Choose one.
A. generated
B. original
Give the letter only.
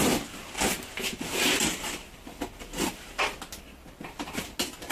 B